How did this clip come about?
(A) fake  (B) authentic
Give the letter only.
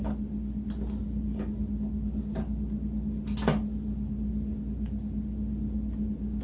B